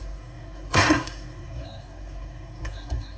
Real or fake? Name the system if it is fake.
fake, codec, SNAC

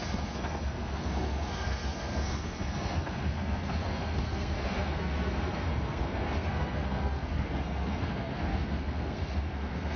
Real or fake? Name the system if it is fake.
fake, codec, SNAC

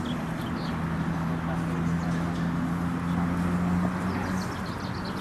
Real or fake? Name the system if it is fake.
real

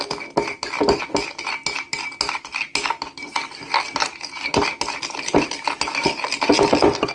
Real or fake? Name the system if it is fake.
real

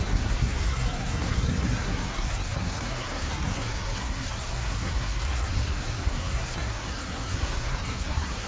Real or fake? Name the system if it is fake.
fake, codec, SNAC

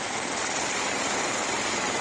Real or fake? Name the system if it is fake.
real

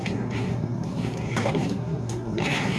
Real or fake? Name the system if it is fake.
fake, codec, SNAC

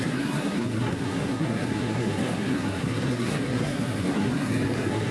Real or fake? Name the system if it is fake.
fake, codec, SNAC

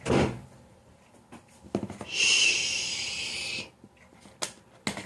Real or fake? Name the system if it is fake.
real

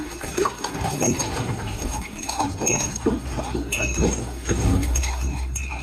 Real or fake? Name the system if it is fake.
fake, codec, SNAC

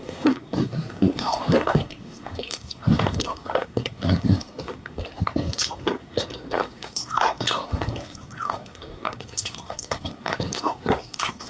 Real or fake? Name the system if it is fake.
fake, codec, SNAC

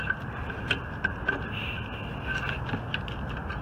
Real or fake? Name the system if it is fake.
real